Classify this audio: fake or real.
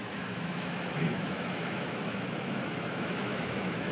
fake